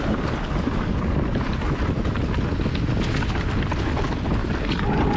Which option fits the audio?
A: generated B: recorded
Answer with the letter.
B